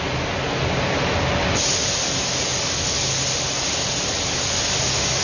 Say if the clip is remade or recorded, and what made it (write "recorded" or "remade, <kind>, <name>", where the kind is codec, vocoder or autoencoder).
recorded